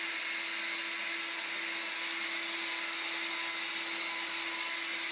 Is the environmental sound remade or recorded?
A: recorded